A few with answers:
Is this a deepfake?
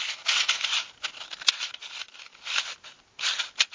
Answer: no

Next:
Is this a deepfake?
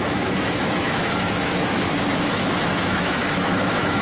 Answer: yes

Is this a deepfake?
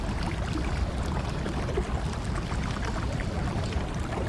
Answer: no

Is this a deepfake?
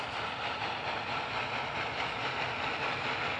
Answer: no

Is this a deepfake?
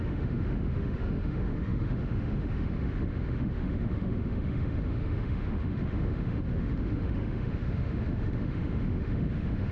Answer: yes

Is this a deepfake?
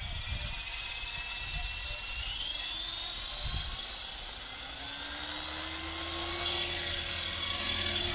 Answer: no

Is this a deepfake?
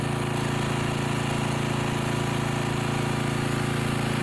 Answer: no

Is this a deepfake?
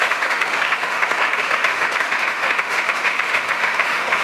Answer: yes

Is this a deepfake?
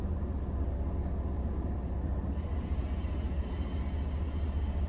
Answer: no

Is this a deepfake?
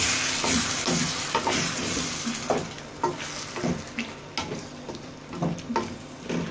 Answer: no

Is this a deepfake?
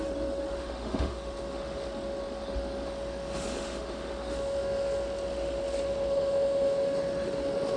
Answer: yes